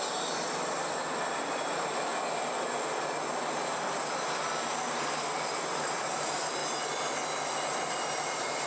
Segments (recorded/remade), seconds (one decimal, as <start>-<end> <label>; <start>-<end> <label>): 0.0-2.1 remade; 2.1-4.9 recorded; 4.9-6.6 remade; 6.6-7.9 recorded; 7.9-8.7 remade